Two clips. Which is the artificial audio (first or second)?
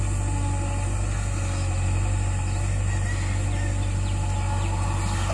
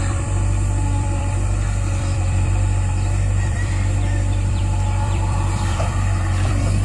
second